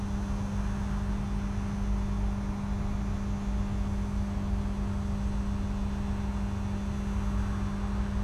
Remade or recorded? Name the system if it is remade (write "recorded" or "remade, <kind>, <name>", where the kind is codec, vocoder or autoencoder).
recorded